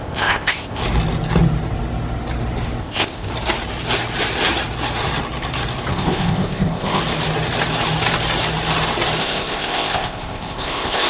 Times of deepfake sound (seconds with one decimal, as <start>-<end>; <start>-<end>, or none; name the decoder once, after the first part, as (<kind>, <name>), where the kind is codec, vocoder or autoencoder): 0.0-0.8 (codec, ZipCodec); 2.8-3.3; 5.9-7.0; 9.2-11.1

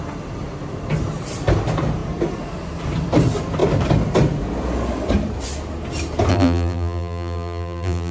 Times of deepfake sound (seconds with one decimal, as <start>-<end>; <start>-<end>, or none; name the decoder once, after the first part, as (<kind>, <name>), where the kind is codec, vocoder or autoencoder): 6.3-8.1 (vocoder, BigVGAN v2)

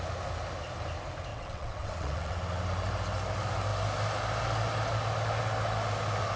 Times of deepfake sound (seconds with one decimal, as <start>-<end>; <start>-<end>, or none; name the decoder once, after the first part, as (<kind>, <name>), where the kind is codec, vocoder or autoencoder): 1.3-2.4 (vocoder, WaveNeXt)

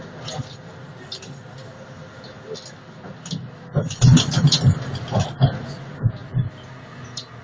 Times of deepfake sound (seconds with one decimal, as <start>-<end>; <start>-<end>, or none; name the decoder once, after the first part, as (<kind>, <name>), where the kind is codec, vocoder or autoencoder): none

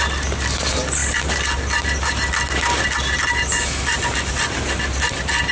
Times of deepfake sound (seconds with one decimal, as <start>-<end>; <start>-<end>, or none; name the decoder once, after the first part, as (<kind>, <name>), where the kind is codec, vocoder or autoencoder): none

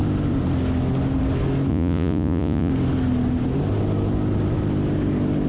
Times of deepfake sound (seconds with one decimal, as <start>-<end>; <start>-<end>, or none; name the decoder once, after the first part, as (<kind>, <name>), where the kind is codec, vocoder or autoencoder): 1.7-2.7 (vocoder, Vocos)

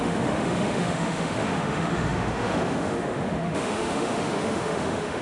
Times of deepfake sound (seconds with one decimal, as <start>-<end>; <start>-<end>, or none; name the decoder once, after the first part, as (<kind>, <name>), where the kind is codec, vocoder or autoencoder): 0.0-5.2 (autoencoder, DAC-VAE)